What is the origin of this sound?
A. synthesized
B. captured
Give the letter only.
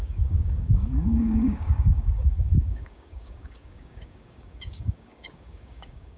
A